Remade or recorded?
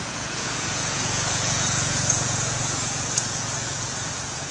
remade